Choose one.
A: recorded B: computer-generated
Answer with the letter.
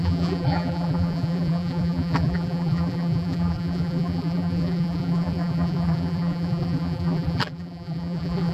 B